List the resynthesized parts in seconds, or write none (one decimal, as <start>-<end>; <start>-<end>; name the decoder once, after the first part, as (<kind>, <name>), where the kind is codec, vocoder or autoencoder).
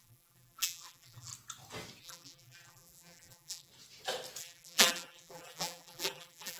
0.0-1.3 (vocoder, BigVGAN v2); 2.0-3.7; 4.4-6.6